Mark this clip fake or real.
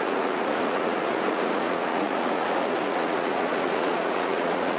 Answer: fake